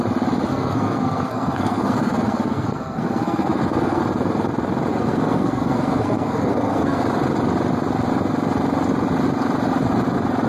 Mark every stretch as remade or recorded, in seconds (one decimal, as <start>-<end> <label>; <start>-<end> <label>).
0.0-0.5 recorded; 0.5-4.0 remade; 4.0-4.9 recorded; 4.9-7.0 remade; 7.0-10.5 recorded